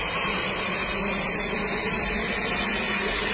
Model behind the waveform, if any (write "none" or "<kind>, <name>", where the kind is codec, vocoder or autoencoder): none